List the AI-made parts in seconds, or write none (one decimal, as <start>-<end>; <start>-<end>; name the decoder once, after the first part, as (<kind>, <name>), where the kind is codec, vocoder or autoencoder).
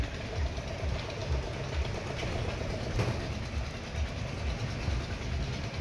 none